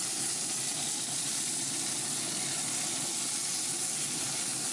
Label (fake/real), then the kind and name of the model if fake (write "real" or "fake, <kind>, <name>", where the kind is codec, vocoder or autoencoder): real